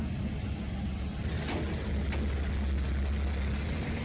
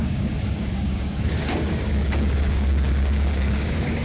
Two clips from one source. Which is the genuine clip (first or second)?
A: first